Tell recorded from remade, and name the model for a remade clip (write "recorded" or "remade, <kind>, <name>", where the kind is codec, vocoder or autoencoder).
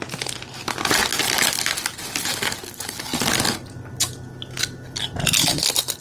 recorded